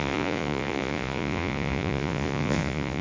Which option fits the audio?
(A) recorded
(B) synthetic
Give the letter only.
B